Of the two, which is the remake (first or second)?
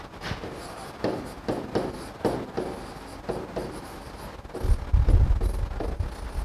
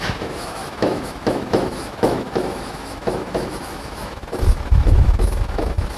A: second